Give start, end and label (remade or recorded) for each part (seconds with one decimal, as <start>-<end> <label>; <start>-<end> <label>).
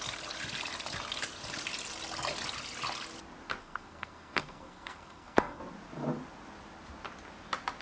0.0-3.6 recorded; 3.6-5.6 remade; 5.6-7.8 recorded